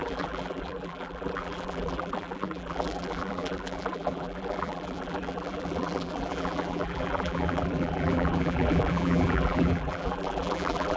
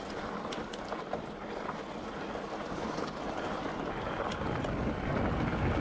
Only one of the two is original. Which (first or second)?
second